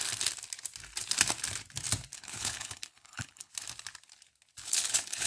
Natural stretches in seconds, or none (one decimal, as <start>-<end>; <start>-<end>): 0.0-2.2; 3.5-4.6